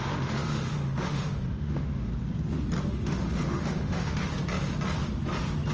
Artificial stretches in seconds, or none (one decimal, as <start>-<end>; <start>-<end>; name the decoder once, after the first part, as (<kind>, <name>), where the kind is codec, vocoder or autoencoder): 0.0-2.1 (autoencoder, DAC-VAE); 2.9-4.3